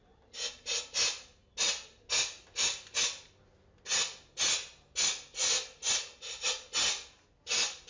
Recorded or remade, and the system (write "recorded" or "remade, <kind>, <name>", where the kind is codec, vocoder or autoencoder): recorded